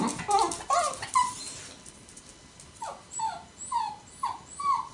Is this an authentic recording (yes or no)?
yes